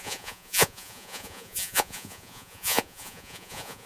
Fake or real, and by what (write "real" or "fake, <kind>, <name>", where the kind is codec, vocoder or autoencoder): fake, vocoder, Vocos